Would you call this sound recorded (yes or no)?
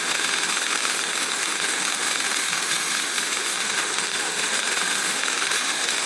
no